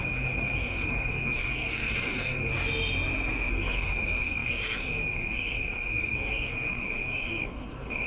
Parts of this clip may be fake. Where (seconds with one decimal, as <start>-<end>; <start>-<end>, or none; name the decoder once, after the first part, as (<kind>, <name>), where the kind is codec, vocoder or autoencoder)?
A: 0.0-2.5 (codec, SNAC); 3.5-8.1